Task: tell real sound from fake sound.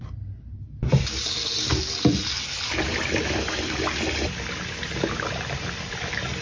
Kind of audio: real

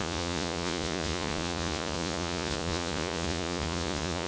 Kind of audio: fake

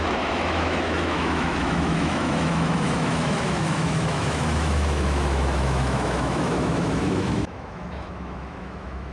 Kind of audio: fake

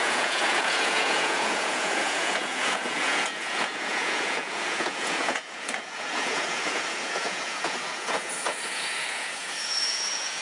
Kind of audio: fake